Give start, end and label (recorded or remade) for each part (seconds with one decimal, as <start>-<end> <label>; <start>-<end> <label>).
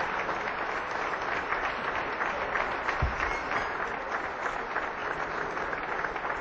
0.0-6.4 recorded